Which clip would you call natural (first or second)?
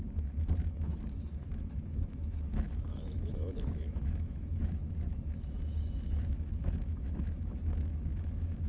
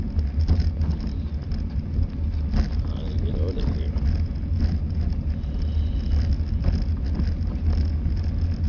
second